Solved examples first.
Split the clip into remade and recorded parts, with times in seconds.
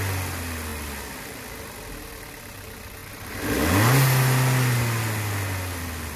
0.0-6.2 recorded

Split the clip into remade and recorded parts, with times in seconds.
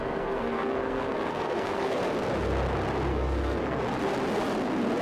0.0-2.0 remade; 2.0-3.1 recorded; 3.1-3.8 remade; 3.8-5.0 recorded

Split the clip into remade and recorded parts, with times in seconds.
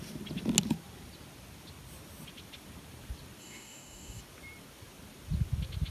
0.0-3.4 recorded; 3.4-4.2 remade; 4.2-5.9 recorded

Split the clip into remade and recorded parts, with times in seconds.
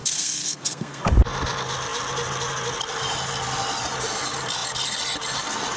0.0-1.0 remade; 1.0-5.8 recorded